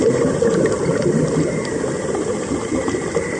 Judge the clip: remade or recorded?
recorded